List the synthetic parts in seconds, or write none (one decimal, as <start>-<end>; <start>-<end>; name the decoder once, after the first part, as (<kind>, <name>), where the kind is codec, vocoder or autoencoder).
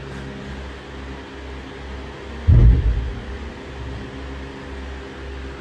none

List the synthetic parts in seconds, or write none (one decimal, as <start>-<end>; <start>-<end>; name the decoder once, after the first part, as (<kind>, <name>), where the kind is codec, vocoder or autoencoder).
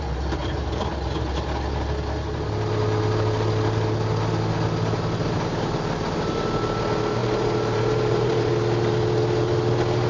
0.4-0.9 (vocoder, BigVGAN v2); 7.2-8.5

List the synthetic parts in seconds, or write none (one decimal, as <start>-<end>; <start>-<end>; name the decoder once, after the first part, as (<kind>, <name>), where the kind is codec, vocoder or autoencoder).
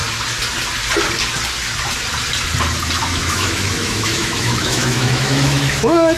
3.0-6.2 (autoencoder, DAC-VAE)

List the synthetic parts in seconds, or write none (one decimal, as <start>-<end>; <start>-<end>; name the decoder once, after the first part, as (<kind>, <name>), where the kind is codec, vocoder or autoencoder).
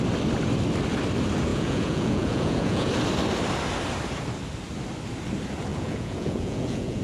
1.5-2.9 (vocoder, Vocos); 5.7-7.0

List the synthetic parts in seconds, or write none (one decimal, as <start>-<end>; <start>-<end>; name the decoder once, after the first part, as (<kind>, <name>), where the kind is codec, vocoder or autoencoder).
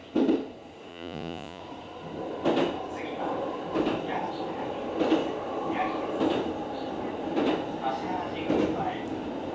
0.9-1.6 (vocoder, Vocos)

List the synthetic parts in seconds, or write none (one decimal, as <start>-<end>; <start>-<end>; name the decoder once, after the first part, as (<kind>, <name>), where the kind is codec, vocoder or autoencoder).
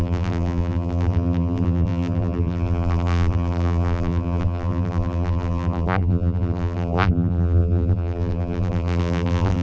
0.0-9.6 (vocoder, BigVGAN v2)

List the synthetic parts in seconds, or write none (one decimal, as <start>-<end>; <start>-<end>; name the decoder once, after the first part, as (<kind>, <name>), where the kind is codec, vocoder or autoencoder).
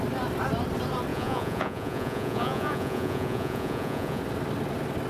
1.1-4.2 (vocoder, Vocos)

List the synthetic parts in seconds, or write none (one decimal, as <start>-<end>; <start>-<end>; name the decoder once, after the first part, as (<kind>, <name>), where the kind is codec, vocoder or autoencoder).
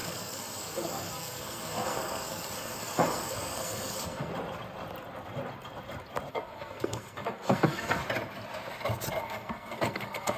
0.0-4.3 (codec, SNAC); 6.3-8.0; 9.2-10.4